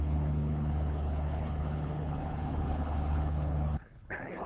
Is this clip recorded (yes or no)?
no